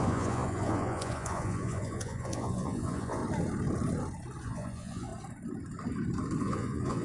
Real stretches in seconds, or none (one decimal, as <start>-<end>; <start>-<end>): 3.2-4.4; 5.1-6.4